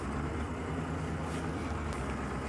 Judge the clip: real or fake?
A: real